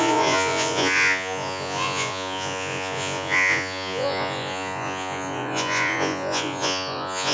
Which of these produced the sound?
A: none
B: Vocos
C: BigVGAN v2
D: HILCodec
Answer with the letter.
B